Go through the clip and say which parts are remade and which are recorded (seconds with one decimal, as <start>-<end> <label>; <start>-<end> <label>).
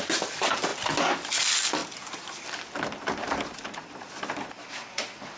0.0-5.4 recorded